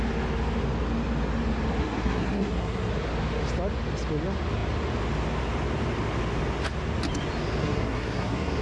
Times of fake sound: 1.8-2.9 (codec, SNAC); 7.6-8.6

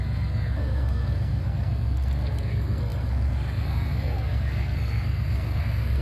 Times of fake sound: 0.0-6.0 (codec, SNAC)

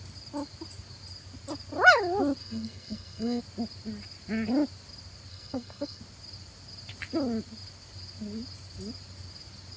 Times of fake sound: 2.4-3.4 (codec, SNAC); 5.3-6.0